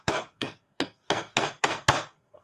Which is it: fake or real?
fake